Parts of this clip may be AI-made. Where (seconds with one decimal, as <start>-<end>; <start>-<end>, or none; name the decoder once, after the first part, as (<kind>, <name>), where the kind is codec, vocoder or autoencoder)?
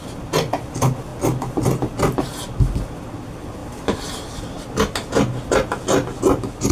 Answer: 3.6-4.4 (vocoder, BigVGAN v2)